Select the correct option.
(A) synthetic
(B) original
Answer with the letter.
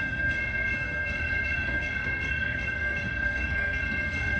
A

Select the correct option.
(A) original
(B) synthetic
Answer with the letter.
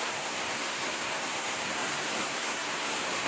B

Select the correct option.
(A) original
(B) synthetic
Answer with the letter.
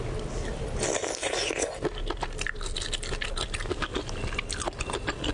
A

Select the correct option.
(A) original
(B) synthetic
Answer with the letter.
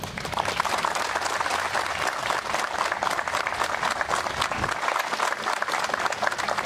A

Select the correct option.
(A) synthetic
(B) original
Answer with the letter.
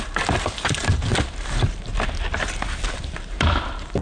B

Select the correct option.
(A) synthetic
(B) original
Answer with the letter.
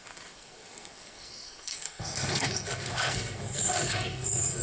A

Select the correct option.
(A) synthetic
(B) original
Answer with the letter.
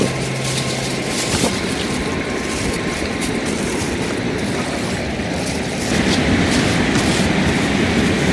B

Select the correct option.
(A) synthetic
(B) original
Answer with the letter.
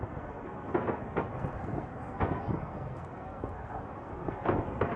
A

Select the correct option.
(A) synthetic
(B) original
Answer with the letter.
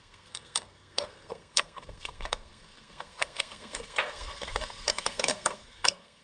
A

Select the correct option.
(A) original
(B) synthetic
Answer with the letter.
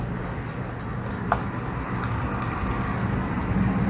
A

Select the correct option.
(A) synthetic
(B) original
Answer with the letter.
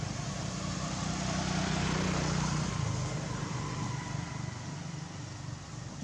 B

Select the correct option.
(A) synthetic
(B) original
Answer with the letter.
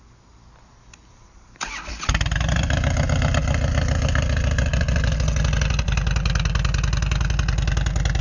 B